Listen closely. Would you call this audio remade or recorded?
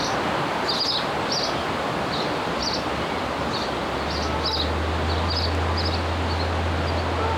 recorded